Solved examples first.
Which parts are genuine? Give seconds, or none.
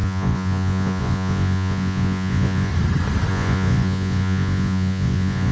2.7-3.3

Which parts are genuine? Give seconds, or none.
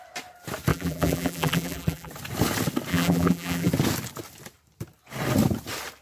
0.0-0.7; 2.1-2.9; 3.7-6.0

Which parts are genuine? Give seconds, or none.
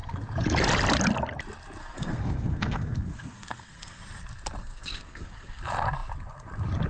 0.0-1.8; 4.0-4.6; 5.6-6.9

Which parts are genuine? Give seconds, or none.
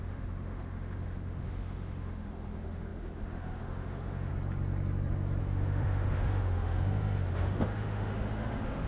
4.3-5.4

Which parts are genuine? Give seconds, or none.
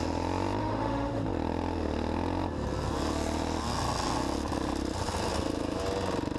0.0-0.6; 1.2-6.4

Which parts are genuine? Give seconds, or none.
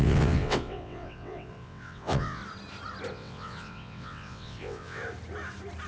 2.4-3.1; 5.0-5.9